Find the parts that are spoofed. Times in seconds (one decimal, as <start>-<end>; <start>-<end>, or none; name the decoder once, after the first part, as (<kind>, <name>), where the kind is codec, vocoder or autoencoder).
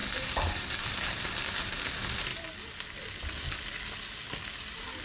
0.0-1.2 (vocoder, BigVGAN v2)